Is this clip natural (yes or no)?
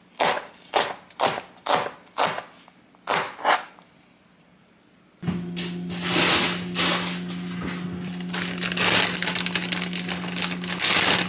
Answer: yes